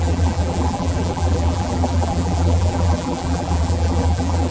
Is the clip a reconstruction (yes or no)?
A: yes